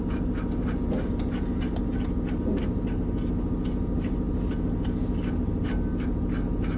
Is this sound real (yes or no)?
yes